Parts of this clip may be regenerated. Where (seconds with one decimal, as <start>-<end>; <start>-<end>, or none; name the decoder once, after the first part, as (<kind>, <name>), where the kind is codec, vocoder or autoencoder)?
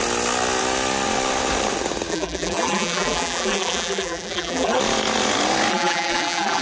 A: 2.1-4.8 (vocoder, BigVGAN v2); 5.7-6.6